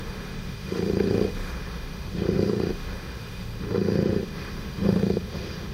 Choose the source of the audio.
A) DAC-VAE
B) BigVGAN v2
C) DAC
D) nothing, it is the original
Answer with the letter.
A